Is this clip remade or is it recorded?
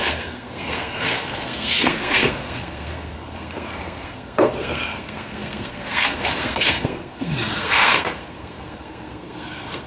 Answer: remade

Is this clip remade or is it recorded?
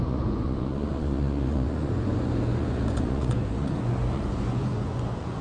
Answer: remade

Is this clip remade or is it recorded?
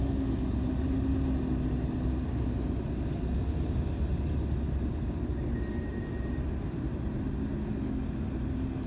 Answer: recorded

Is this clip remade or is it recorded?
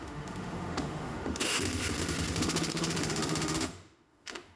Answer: remade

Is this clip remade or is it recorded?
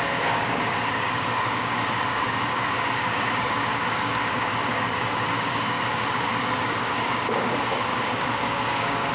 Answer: remade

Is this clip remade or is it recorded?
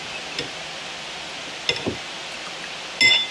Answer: recorded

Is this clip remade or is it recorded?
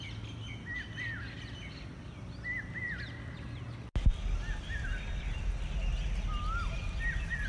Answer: recorded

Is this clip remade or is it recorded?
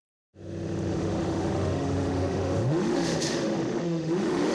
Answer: remade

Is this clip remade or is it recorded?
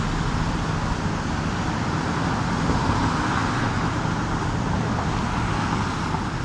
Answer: recorded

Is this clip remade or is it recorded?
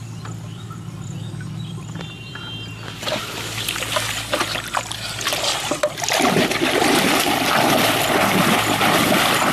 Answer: recorded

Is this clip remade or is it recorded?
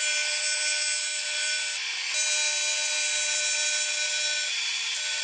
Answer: recorded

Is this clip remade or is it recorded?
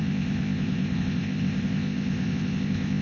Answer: remade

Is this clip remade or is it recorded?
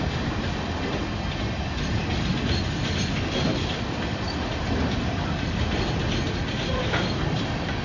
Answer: recorded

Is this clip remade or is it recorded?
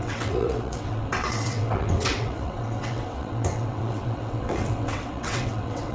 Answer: remade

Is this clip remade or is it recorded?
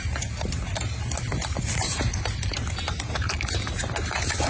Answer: remade